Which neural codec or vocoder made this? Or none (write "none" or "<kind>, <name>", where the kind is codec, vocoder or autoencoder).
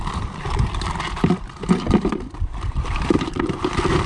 vocoder, BigVGAN v2